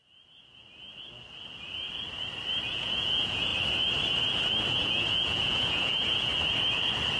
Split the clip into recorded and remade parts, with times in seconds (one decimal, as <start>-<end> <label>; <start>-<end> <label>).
0.0-2.7 recorded; 2.7-3.5 remade; 3.5-4.7 recorded; 4.7-6.3 remade; 6.3-7.2 recorded